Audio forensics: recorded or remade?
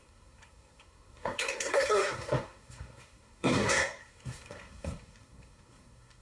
remade